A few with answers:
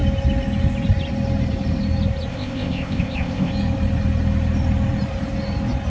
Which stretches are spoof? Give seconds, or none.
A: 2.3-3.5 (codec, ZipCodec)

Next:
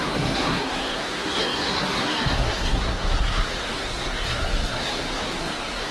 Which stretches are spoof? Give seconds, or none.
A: 0.0-5.9 (codec, SNAC)

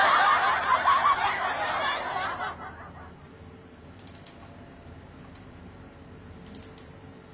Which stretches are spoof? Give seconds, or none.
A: none

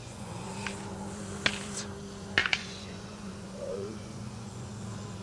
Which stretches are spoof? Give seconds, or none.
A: 0.0-0.5 (vocoder, Vocos); 2.4-4.8

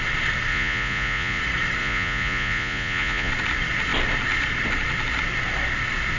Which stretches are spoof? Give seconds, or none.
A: 0.5-1.4 (vocoder, Vocos); 1.8-3.3

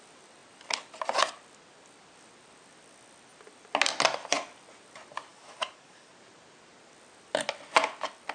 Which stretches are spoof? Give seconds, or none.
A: 5.3-6.1 (codec, DAC)

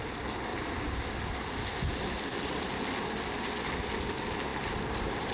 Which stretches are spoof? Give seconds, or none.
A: 0.5-2.7 (vocoder, BigVGAN v2); 4.5-5.3